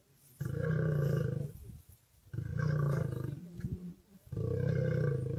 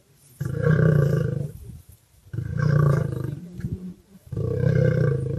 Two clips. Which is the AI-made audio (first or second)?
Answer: second